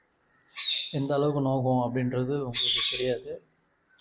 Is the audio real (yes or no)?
no